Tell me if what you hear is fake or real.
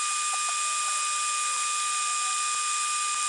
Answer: real